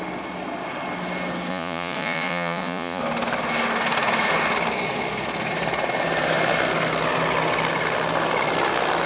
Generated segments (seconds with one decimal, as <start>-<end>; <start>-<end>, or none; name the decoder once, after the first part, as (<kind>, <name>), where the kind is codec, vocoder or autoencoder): 1.5-3.0 (vocoder, Vocos)

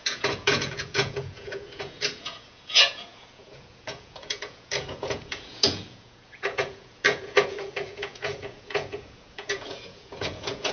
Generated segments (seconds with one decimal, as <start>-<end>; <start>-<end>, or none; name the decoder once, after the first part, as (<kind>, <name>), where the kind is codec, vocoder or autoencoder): 0.0-10.7 (vocoder, Vocos)